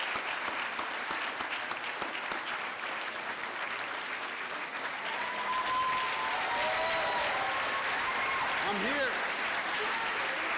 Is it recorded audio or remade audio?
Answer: recorded